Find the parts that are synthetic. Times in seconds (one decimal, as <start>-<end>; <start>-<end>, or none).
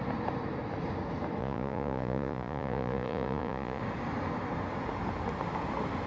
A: 1.4-3.8